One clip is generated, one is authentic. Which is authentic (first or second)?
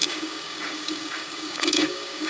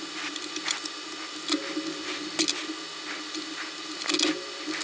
second